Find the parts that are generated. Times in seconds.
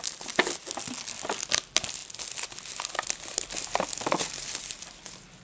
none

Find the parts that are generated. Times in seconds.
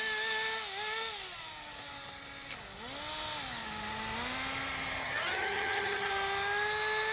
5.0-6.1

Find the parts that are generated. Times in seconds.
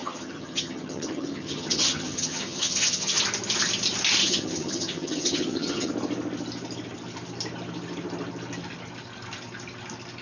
0.0-3.2; 4.2-5.9